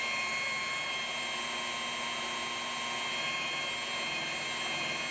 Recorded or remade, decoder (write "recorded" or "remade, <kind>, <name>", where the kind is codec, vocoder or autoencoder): recorded